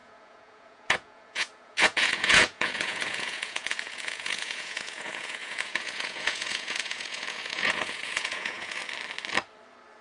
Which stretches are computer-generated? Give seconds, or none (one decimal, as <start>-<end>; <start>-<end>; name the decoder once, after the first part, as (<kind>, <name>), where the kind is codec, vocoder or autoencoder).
0.0-8.8 (vocoder, Vocos)